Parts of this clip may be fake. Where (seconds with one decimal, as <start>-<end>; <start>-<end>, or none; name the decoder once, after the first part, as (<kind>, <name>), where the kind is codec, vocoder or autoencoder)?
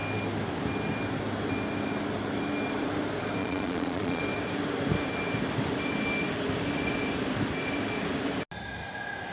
3.4-4.2 (vocoder, Vocos)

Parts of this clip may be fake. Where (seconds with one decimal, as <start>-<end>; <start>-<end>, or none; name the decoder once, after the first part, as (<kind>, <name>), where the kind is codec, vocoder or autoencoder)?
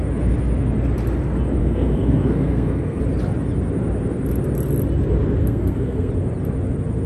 1.6-3.0 (codec, SNAC); 5.4-6.1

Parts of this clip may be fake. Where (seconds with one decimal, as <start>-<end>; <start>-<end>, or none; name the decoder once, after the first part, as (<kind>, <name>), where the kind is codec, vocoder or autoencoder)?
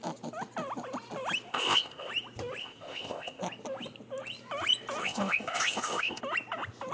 1.5-2.1 (codec, ZipCodec); 2.6-3.4; 5.0-6.2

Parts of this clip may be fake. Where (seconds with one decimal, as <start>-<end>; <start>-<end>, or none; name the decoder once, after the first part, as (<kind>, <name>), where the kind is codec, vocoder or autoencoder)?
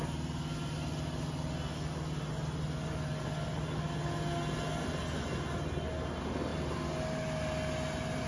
none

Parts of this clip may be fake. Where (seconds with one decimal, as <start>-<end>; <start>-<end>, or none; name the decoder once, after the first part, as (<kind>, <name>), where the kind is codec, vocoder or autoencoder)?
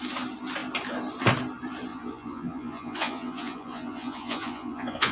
1.9-5.1 (vocoder, Vocos)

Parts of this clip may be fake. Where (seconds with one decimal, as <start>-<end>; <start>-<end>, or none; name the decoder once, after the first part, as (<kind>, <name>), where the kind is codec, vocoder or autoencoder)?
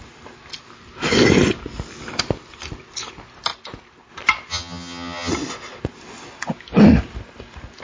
4.5-5.3 (vocoder, HiFi-GAN)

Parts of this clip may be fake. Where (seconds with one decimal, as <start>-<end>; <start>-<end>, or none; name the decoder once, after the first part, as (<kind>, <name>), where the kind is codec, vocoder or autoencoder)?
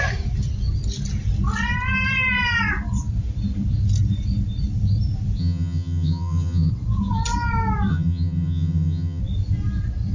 5.4-6.7 (vocoder, HiFi-GAN); 7.9-9.2